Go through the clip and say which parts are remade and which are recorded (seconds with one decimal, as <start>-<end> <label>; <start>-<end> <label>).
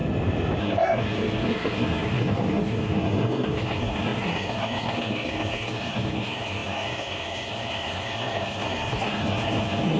0.0-0.6 recorded; 0.6-10.0 remade